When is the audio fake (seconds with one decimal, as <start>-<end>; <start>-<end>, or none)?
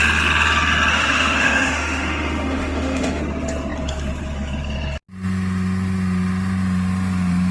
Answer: 0.9-3.2